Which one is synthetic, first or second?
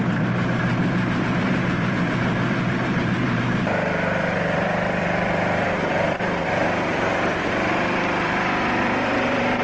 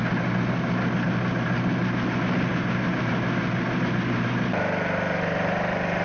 first